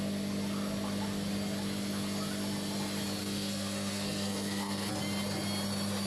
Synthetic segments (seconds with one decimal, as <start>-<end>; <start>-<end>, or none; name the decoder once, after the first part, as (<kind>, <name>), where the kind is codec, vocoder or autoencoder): 3.2-4.9 (codec, SNAC)